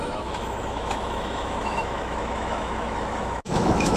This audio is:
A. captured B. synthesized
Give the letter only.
B